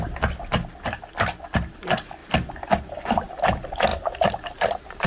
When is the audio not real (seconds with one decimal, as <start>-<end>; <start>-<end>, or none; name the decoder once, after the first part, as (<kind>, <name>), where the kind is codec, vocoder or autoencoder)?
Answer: 2.2-3.5 (vocoder, BigVGAN v2); 3.9-5.1